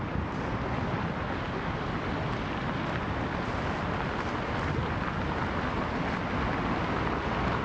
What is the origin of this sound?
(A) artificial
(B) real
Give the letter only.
B